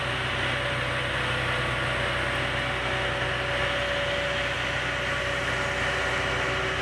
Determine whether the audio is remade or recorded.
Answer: recorded